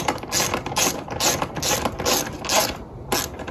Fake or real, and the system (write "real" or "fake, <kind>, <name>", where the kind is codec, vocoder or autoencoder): real